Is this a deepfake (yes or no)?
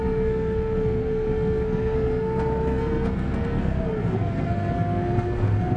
yes